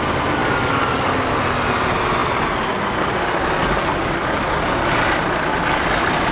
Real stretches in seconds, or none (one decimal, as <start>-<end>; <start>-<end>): 0.0-0.4; 1.4-3.9; 4.6-6.3